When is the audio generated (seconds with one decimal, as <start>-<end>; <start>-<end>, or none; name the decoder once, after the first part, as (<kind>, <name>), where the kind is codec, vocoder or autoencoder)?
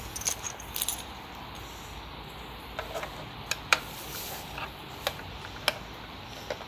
3.7-5.6 (vocoder, BigVGAN v2)